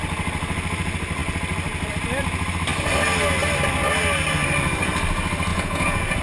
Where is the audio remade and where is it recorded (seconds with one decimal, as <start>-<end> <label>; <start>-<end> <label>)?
0.0-5.5 recorded; 5.5-6.2 remade